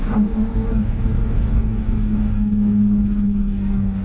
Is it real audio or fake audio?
fake